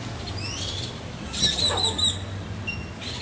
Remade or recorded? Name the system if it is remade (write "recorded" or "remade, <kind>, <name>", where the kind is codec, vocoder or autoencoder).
recorded